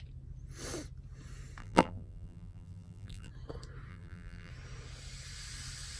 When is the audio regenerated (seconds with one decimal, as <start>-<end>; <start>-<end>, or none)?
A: 1.6-3.3; 3.9-4.5